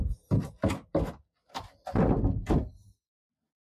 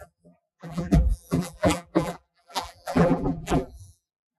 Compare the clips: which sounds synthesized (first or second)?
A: second